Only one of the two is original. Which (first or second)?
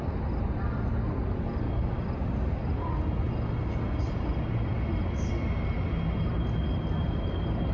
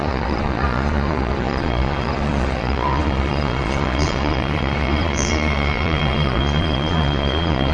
first